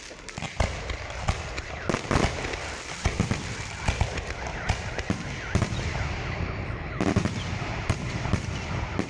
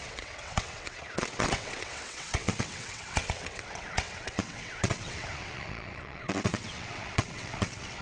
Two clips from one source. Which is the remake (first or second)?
second